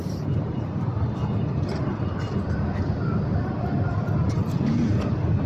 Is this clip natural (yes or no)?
no